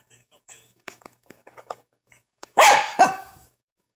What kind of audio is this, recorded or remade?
remade